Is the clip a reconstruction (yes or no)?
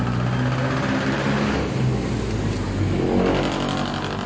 no